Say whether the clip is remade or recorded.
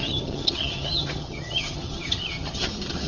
remade